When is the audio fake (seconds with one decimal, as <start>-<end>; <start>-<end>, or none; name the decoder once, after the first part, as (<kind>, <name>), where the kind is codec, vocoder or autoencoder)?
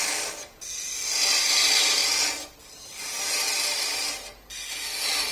none